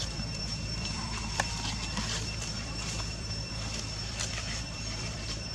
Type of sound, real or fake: fake